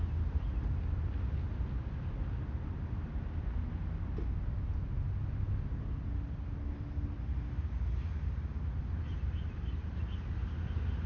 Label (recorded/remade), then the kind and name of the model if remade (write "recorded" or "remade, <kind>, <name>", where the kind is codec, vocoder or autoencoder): recorded